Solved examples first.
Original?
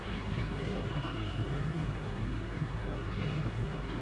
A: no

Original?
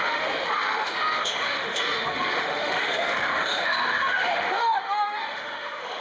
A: no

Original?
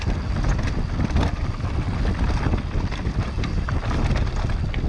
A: yes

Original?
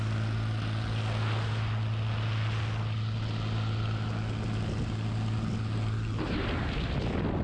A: yes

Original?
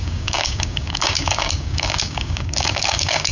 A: no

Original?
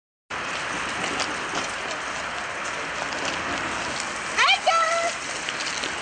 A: yes